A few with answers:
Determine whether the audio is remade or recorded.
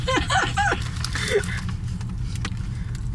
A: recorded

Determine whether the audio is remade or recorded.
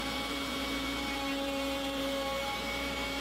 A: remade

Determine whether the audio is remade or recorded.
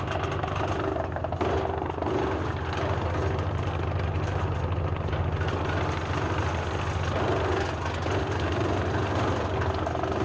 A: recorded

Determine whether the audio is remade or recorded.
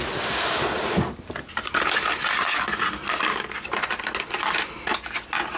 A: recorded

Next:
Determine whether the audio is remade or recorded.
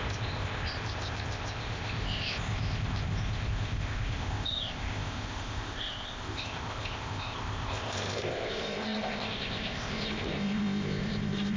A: remade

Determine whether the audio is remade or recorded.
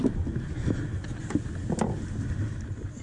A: recorded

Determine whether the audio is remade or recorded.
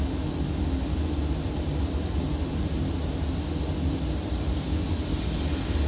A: recorded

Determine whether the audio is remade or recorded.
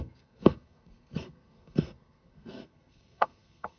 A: remade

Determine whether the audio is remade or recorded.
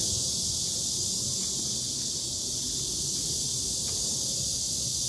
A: recorded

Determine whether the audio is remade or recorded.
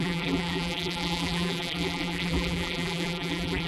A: remade